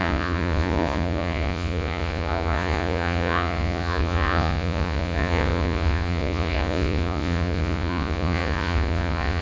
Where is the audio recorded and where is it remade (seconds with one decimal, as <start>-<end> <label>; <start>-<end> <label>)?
0.0-9.4 remade